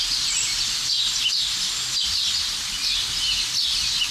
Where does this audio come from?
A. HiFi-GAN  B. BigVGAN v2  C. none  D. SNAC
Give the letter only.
C